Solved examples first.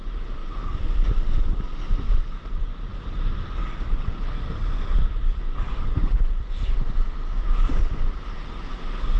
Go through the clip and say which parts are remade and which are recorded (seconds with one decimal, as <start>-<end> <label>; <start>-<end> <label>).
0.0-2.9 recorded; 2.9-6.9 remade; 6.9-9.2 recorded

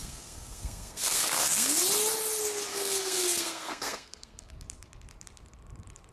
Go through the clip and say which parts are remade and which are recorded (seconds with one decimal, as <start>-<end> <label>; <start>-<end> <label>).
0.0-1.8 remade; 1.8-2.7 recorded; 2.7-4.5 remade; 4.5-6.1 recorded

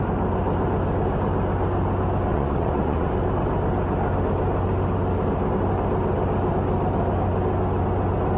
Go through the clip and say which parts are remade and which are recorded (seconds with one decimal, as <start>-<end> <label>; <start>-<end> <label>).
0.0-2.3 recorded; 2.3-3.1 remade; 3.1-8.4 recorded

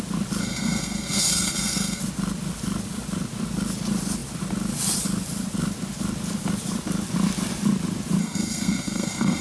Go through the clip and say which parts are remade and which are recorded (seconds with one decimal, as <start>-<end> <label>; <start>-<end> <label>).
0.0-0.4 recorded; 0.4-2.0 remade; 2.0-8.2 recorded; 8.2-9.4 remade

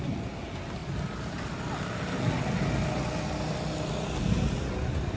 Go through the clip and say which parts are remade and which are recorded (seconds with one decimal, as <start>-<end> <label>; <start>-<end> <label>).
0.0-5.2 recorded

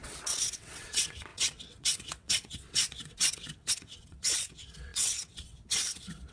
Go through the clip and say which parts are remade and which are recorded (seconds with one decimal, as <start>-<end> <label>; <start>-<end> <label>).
0.0-6.3 remade

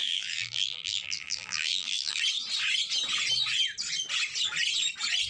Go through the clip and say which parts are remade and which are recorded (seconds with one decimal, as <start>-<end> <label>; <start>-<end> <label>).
0.0-2.2 remade; 2.2-5.3 recorded